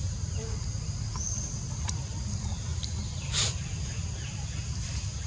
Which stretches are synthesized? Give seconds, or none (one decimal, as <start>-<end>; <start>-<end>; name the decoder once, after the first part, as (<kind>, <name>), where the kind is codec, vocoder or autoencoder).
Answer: none

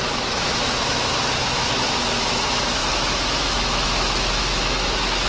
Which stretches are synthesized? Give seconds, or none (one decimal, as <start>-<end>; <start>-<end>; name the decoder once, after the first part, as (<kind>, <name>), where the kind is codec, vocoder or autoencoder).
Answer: 0.0-5.3 (autoencoder, DAC-VAE)